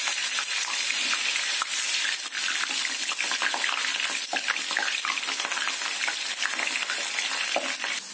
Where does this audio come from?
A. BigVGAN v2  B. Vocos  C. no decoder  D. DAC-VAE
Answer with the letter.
C